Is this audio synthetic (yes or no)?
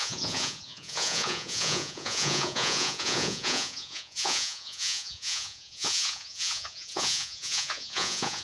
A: yes